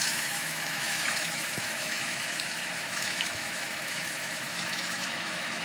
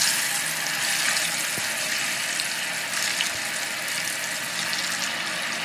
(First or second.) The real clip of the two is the second